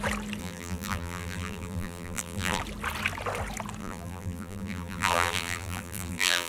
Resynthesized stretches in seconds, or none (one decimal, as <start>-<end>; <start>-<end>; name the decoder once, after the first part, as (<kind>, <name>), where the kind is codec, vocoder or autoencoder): 0.4-2.6 (vocoder, BigVGAN v2); 3.8-6.5

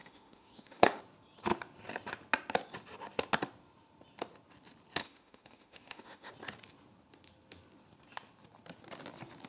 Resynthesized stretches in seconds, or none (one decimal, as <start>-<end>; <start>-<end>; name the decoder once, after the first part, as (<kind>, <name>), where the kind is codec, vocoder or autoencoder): 0.0-1.0 (autoencoder, DAC-VAE); 5.0-6.3

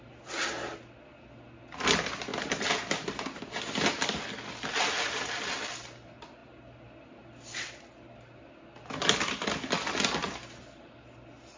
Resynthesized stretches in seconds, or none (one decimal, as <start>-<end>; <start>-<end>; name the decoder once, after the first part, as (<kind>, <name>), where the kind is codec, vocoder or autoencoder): none

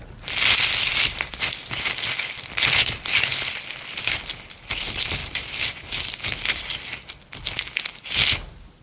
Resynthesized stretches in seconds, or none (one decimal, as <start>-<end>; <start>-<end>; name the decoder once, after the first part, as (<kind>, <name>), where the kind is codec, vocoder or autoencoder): none

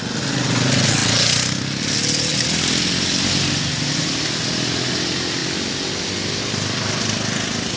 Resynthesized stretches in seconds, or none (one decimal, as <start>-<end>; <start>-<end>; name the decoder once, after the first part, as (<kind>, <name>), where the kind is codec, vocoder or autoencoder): none

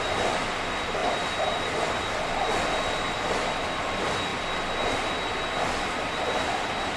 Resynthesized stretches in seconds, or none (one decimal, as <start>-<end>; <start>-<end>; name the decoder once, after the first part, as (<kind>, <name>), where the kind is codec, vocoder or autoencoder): none